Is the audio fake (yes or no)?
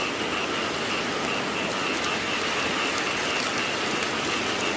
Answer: no